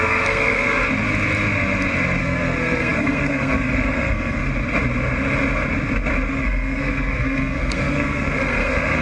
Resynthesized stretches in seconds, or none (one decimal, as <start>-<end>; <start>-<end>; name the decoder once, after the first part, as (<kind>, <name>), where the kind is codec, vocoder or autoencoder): 0.0-0.8 (codec, SNAC); 2.2-4.4; 6.3-9.0